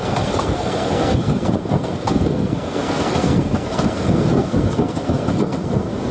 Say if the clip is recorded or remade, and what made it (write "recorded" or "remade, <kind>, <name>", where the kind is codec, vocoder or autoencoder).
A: remade, codec, SNAC